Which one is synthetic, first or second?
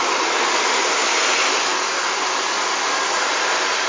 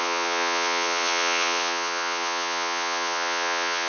second